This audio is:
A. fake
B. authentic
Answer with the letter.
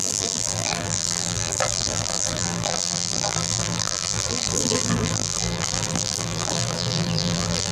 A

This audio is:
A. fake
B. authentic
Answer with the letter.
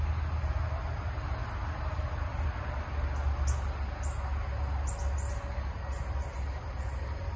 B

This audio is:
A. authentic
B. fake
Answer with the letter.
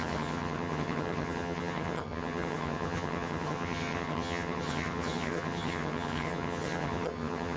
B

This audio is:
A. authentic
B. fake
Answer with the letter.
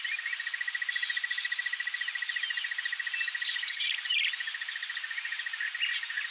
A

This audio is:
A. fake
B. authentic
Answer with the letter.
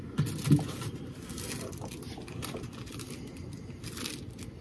B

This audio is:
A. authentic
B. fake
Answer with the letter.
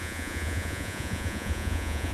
B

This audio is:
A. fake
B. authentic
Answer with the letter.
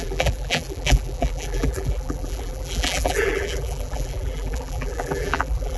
A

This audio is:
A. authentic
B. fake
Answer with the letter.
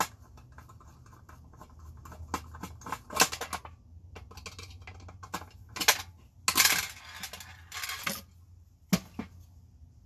A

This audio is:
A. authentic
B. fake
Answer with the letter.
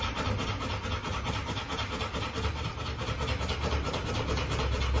A